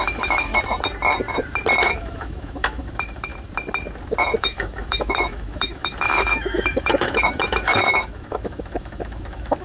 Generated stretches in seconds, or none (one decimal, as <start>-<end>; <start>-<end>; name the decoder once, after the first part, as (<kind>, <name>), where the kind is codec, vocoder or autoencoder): 0.0-0.5 (autoencoder, DAC-VAE); 1.8-3.3; 4.4-9.6

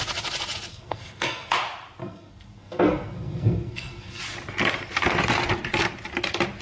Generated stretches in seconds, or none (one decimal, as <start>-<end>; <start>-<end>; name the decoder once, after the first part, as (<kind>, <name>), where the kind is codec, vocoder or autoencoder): 0.7-1.5 (codec, SNAC); 2.0-4.2

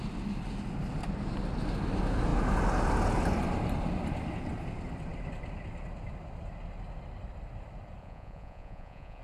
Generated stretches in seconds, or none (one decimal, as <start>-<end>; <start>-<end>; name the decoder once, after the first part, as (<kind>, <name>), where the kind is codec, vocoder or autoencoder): 8.0-9.2 (vocoder, Vocos)

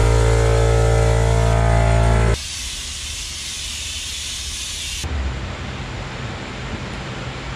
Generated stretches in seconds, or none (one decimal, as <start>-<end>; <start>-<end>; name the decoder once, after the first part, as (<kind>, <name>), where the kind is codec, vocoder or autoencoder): none